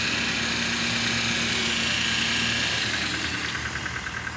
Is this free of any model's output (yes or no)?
yes